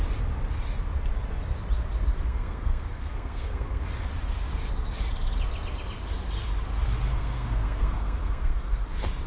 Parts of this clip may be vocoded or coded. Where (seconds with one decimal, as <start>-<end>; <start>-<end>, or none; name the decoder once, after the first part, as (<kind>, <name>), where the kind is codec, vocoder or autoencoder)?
2.3-3.8 (codec, SNAC); 7.1-8.8